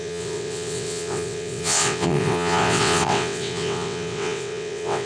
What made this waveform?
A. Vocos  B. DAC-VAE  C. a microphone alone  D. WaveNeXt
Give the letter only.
D